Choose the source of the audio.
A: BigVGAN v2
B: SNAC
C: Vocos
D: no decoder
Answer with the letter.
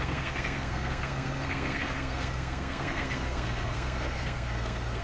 B